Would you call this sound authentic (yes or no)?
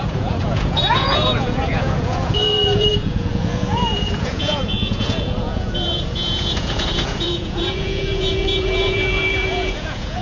no